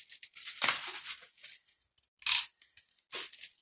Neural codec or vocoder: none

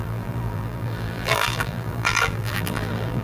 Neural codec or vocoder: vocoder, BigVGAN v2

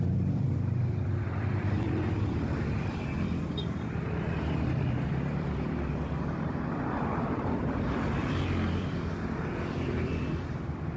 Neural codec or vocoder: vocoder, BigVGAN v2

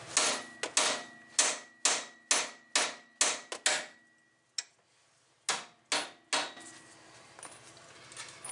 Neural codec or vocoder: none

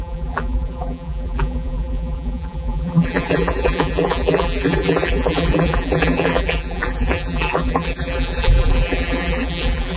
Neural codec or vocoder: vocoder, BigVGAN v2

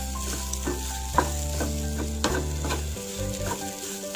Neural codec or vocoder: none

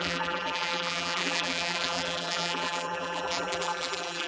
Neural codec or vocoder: vocoder, BigVGAN v2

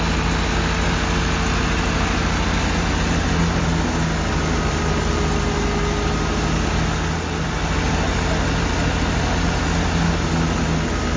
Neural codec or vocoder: none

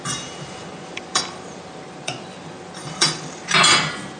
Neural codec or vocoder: vocoder, BigVGAN v2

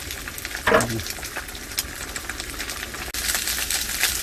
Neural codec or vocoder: none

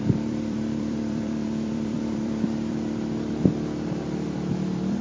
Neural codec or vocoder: vocoder, BigVGAN v2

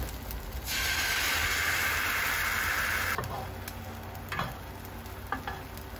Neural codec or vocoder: none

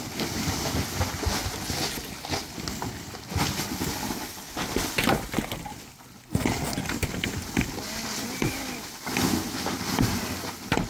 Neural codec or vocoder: none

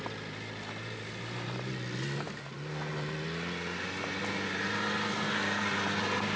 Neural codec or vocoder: none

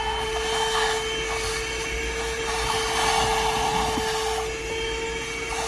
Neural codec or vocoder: none